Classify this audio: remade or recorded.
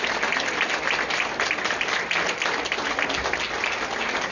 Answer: recorded